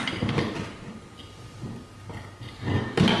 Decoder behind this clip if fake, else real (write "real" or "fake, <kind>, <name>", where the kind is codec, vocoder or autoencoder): real